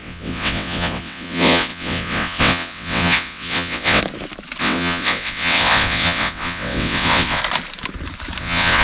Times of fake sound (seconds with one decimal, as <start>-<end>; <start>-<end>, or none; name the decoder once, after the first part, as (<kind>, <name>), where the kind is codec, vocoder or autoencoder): 0.0-4.0 (vocoder, WaveNeXt); 4.6-7.4; 8.4-8.8